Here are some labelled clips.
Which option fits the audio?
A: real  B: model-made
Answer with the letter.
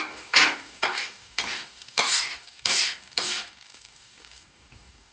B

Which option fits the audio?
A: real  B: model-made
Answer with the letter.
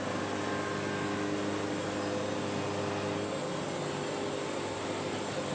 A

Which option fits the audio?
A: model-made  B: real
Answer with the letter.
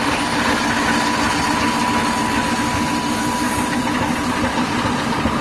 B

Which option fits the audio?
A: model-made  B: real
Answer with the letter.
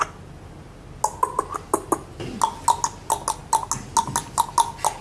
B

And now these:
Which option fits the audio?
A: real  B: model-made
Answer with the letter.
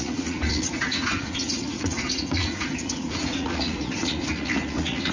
B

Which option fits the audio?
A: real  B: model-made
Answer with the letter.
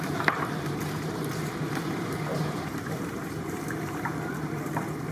B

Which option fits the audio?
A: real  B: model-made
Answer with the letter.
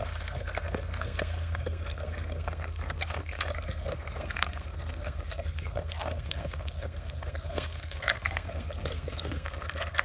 B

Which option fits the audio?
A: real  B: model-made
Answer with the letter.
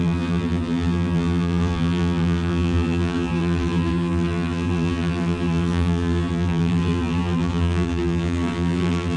B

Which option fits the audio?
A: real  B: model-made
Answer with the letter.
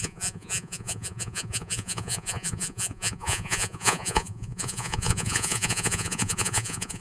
B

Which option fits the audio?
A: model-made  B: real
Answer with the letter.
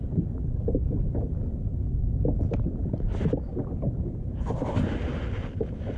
B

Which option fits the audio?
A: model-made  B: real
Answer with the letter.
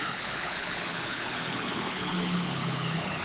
A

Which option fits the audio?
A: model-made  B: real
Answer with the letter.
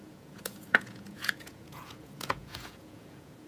A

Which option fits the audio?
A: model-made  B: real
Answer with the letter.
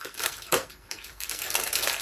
A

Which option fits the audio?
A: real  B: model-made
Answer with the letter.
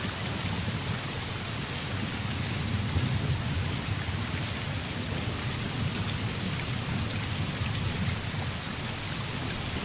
A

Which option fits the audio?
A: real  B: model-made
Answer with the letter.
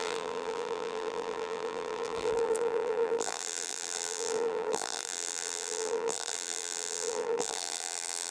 B